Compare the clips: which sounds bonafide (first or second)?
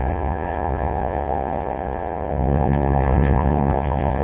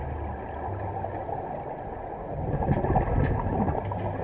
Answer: second